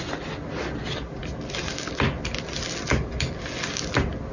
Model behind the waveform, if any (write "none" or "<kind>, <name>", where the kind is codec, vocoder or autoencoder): none